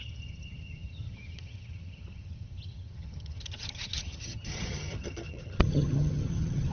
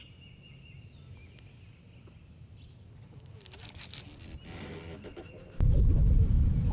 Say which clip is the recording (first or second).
second